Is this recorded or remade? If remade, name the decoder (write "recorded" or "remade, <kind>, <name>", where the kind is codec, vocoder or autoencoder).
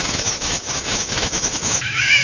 remade, autoencoder, DAC-VAE